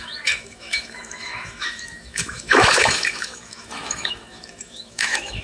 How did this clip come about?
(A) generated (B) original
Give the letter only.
A